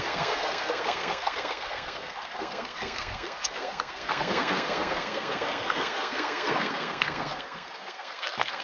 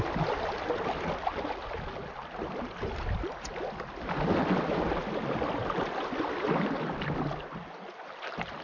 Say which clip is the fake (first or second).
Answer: first